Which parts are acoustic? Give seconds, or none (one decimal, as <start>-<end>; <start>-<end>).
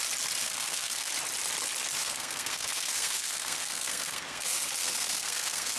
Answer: 0.0-0.4; 1.1-2.0